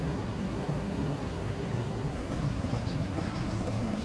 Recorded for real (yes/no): no